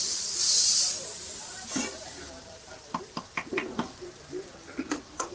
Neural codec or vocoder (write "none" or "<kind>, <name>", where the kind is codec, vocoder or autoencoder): vocoder, BigVGAN v2